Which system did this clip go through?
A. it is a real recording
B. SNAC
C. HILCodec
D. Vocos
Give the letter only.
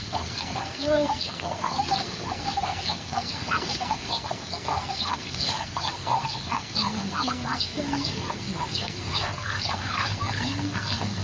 B